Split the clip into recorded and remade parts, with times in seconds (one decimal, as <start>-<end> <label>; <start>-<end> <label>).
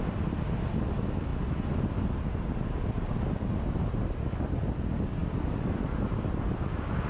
0.0-7.1 recorded